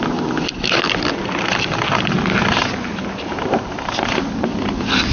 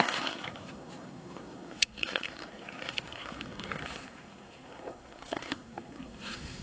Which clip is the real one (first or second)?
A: first